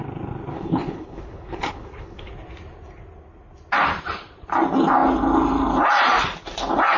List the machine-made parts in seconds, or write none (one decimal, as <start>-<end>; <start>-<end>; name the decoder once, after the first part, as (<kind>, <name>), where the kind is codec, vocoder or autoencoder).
0.5-2.3 (codec, HILCodec)